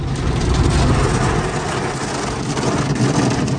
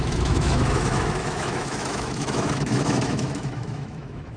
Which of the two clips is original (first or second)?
first